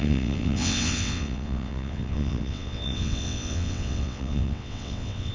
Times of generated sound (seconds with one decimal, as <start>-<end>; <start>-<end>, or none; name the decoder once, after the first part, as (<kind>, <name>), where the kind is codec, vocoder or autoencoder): 0.0-5.3 (vocoder, WaveNeXt)